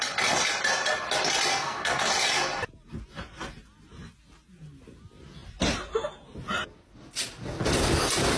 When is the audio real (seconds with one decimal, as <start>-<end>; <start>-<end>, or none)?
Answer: 0.0-1.5; 2.1-8.4

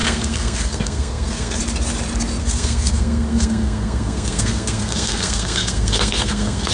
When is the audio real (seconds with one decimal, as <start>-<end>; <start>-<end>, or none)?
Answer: 1.6-2.4